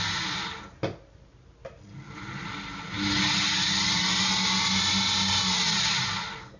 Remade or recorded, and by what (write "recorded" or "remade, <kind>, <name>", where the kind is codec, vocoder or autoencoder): recorded